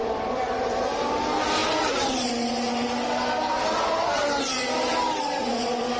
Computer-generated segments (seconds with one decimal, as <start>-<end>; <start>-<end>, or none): 0.0-1.0